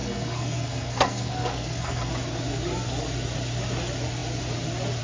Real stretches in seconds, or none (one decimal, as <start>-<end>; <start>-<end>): 2.1-5.0